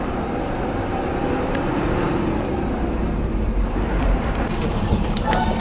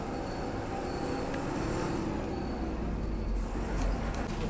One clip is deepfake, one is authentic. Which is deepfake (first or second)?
first